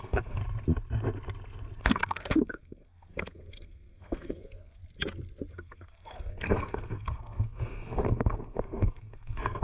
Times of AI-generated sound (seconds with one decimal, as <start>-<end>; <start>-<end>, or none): 0.0-0.4; 1.8-4.8; 5.5-9.6